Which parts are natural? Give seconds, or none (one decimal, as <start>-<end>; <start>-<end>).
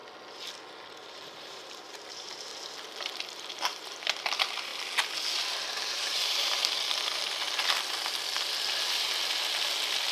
0.0-0.9; 2.5-3.2; 4.7-5.9; 6.6-10.1